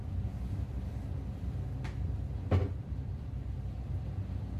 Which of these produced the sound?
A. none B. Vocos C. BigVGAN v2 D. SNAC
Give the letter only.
C